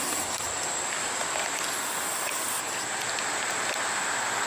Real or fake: real